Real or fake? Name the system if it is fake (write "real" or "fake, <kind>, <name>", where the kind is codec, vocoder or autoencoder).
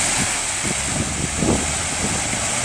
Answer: real